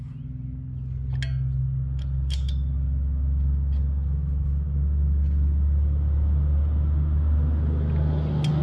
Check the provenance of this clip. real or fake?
real